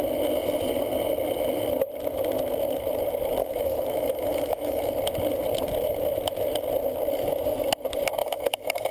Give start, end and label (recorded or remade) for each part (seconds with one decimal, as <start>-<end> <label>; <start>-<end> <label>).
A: 0.0-3.4 recorded; 3.4-4.9 remade; 4.9-8.2 recorded; 8.2-8.9 remade

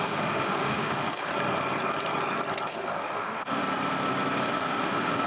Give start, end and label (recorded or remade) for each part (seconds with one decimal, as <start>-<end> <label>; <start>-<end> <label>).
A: 0.0-1.3 remade; 1.3-2.7 recorded; 2.7-3.6 remade; 3.6-4.5 recorded; 4.5-5.3 remade

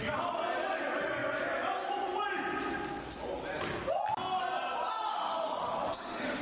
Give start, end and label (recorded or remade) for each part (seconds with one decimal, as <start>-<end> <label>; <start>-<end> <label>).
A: 0.0-5.1 recorded; 5.1-6.4 remade